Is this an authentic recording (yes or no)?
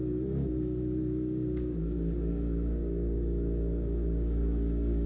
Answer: no